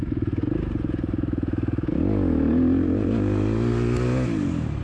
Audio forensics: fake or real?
real